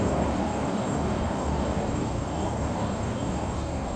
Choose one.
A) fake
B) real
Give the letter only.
A